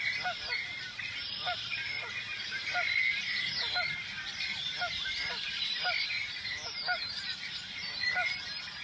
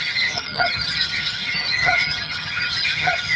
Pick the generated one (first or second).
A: second